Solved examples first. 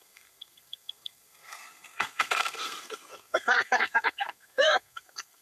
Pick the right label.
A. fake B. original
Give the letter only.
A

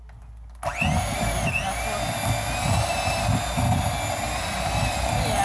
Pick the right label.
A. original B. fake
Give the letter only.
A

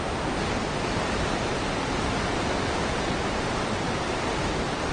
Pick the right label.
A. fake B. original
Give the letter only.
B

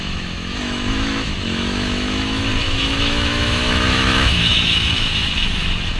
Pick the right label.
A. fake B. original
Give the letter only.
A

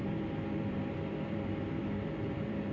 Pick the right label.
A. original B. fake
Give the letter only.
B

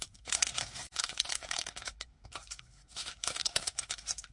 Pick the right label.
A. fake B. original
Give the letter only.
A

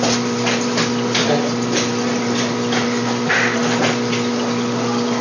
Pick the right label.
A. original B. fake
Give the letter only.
B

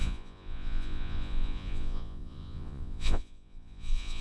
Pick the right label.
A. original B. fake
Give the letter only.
B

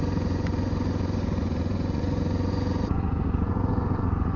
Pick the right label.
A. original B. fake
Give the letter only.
B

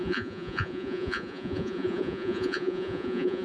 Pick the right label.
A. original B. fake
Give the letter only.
B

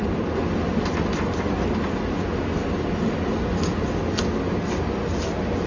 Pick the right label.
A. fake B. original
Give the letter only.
B